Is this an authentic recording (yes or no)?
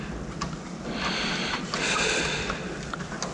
yes